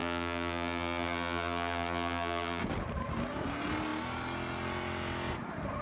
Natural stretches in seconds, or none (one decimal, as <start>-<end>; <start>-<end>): 2.6-5.8